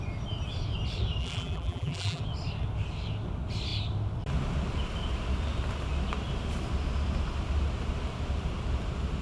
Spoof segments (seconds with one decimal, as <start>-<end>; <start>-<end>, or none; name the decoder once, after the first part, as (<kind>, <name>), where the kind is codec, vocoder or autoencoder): 1.2-2.2 (vocoder, BigVGAN v2)